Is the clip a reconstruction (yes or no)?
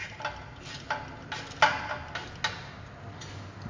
no